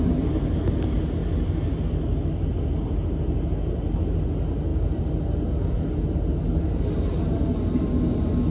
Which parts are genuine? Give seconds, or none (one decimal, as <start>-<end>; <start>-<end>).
0.0-8.5